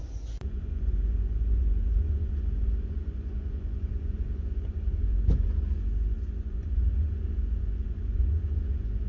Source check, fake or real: fake